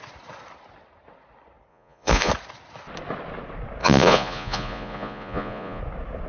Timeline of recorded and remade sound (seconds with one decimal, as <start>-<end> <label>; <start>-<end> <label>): 0.0-1.7 recorded; 1.7-2.3 remade; 2.3-3.8 recorded; 3.8-5.8 remade; 5.8-6.3 recorded